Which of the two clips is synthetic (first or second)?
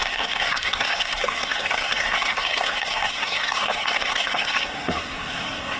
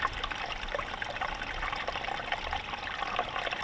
first